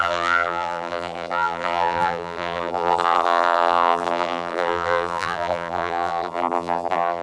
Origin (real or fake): fake